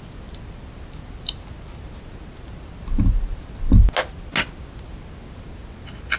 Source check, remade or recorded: recorded